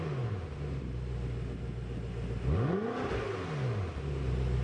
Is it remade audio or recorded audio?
recorded